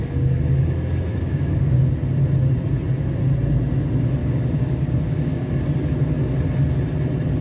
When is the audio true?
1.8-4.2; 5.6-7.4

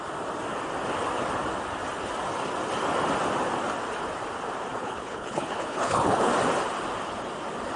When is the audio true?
0.0-4.8; 6.3-7.8

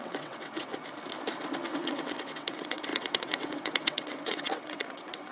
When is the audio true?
0.7-1.7

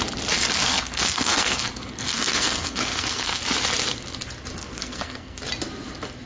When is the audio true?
0.0-0.6; 3.4-4.6; 5.4-6.3

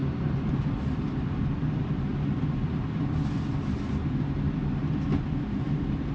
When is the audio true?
1.4-2.1; 3.7-6.1